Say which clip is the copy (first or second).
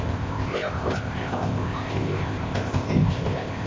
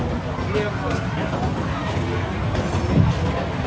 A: first